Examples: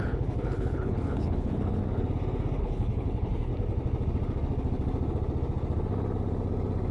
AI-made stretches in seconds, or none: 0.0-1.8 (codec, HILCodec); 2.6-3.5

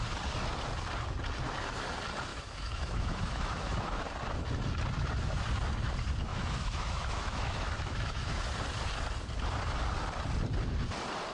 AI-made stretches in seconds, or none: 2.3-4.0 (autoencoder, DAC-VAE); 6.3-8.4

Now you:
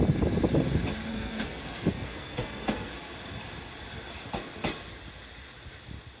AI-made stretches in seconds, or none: 1.1-2.9 (codec, SNAC)

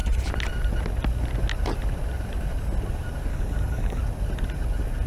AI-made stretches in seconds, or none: 3.3-4.0 (codec, DAC)